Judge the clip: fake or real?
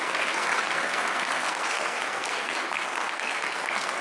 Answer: fake